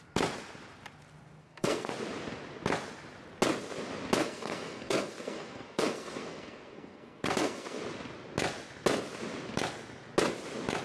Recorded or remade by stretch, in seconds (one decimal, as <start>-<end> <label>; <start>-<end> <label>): 0.0-1.4 recorded; 1.4-1.9 remade; 1.9-4.2 recorded; 4.2-7.8 remade; 7.8-10.8 recorded